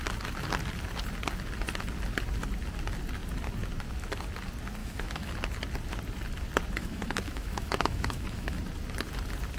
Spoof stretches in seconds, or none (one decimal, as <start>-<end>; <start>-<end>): 4.8-5.3; 6.8-8.6